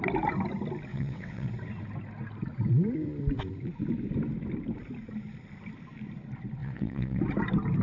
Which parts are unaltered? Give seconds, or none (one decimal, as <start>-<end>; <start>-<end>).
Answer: 0.0-0.9; 1.5-6.6; 7.2-7.8